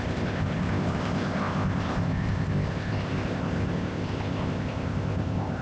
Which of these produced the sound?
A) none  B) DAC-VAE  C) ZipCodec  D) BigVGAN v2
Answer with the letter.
C